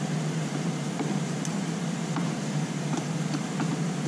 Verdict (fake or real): real